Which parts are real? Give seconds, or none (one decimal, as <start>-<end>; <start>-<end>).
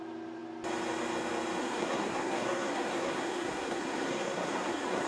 0.0-1.6